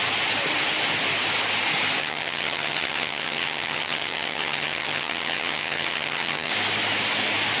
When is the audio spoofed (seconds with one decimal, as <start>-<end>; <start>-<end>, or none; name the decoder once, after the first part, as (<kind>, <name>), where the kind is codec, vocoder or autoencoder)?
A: 2.0-6.5 (vocoder, HiFi-GAN)